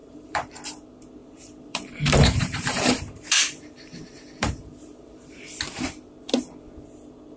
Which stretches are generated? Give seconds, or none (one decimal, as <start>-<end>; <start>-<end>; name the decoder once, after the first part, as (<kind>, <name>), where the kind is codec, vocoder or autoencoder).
0.0-0.6 (vocoder, BigVGAN v2); 1.2-5.6